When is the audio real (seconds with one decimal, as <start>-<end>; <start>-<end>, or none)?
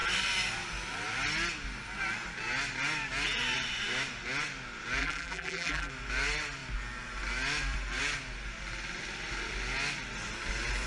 0.0-5.0; 5.9-10.9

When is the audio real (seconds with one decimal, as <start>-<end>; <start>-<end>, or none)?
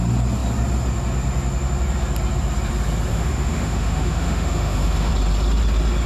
0.0-3.1; 5.1-6.1